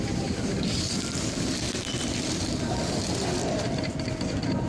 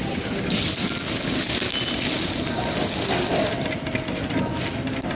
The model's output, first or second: first